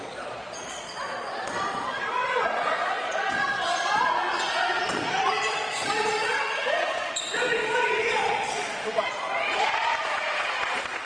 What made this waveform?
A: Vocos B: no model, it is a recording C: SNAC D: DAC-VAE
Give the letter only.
A